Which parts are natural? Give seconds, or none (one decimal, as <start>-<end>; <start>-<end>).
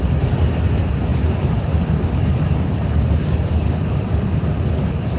0.0-5.2